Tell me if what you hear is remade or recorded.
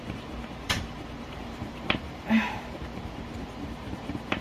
remade